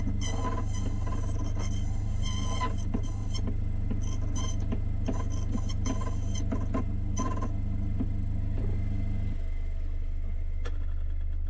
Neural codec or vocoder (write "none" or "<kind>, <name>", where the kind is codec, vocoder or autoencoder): none